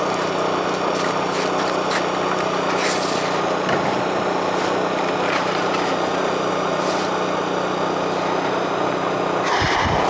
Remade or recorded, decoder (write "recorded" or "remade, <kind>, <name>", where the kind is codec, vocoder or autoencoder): recorded